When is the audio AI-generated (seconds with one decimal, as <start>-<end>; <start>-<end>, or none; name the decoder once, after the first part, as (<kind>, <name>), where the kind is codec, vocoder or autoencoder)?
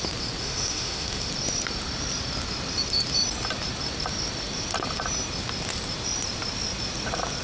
0.4-1.3 (autoencoder, DAC-VAE)